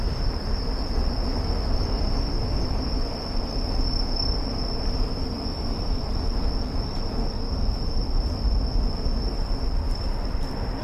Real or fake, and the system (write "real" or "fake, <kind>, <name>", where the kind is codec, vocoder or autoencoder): real